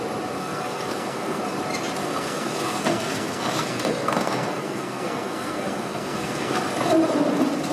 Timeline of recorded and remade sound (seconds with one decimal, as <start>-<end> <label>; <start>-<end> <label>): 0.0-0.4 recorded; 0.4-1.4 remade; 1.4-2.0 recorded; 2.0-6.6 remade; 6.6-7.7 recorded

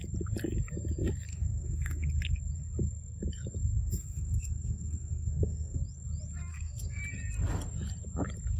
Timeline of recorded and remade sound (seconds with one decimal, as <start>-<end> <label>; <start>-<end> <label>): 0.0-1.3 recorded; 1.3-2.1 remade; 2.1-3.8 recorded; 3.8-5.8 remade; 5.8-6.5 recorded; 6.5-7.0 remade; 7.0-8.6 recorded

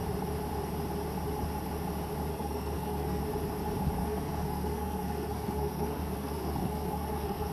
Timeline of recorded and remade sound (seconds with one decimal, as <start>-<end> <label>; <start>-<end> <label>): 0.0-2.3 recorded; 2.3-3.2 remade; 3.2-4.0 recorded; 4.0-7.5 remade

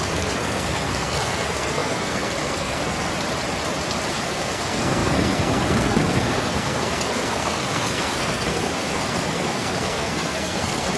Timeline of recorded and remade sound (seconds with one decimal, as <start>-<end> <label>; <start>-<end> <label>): 0.0-3.1 remade; 3.1-4.1 recorded; 4.1-11.0 remade